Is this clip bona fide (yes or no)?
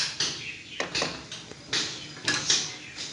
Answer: yes